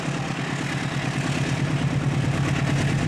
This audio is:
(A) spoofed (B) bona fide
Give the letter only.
B